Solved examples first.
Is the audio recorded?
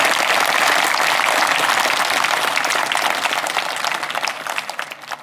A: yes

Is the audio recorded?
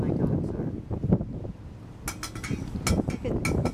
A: yes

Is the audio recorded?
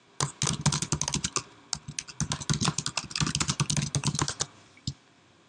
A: yes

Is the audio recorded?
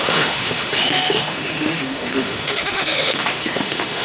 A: no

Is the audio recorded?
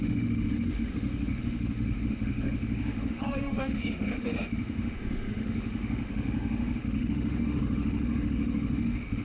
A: no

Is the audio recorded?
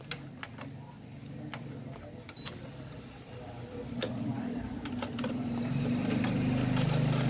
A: yes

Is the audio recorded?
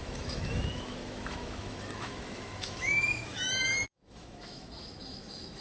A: no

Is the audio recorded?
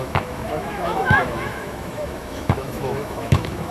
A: no